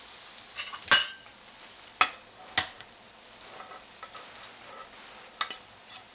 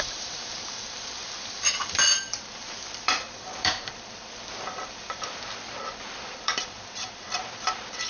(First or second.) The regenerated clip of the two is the second